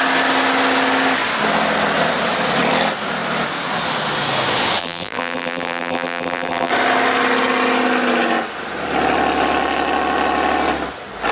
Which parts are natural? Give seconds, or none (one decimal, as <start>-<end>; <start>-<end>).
0.0-4.8; 6.7-11.3